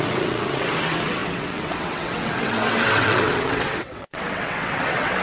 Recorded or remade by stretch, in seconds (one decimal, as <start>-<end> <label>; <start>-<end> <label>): 0.0-5.2 remade